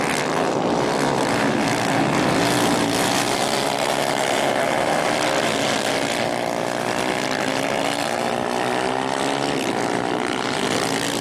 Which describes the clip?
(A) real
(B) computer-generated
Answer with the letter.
A